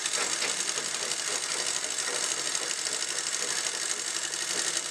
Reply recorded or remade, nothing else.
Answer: recorded